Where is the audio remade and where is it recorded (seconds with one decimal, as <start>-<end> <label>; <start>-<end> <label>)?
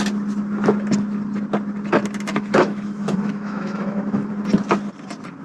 0.0-2.3 recorded; 2.3-4.3 remade; 4.3-5.4 recorded